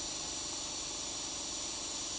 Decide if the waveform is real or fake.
real